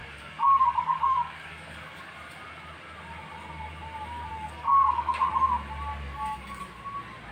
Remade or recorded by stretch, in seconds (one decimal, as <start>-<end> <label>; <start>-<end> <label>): 0.0-2.1 remade; 2.1-4.3 recorded; 4.3-5.3 remade; 5.3-5.9 recorded; 5.9-6.6 remade; 6.6-7.3 recorded